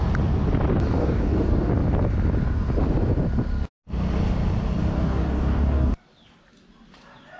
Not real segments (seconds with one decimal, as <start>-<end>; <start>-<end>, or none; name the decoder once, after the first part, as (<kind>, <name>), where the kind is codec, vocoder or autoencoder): 1.0-1.7 (codec, DAC); 4.9-5.9